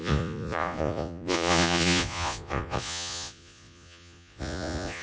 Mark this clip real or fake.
fake